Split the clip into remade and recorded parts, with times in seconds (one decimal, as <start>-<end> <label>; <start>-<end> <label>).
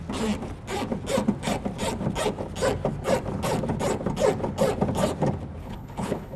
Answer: 0.0-5.6 recorded; 5.6-6.4 remade